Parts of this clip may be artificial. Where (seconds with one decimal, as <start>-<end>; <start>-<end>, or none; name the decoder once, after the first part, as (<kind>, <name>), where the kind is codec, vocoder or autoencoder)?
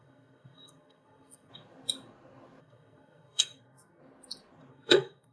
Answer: 0.0-1.5 (codec, SNAC); 2.6-4.0; 4.7-5.3